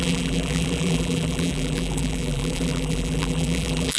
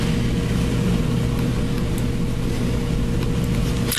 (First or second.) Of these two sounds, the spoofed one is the first